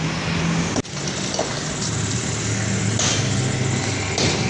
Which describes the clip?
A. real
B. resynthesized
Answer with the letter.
A